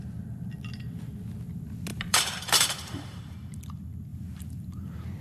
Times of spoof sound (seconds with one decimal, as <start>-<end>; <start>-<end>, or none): 1.9-3.2; 4.1-5.2